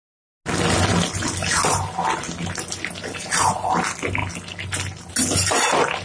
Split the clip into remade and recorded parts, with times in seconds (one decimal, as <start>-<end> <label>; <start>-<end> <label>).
0.0-6.0 recorded